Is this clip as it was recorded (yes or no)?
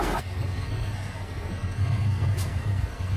no